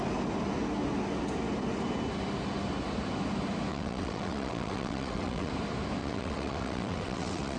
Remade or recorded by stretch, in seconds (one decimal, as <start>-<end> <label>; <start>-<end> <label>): 0.0-3.7 recorded; 3.7-5.5 remade; 5.5-6.0 recorded; 6.0-7.6 remade